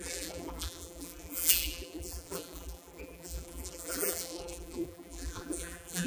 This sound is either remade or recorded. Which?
remade